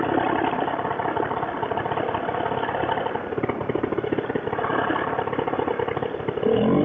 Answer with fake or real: real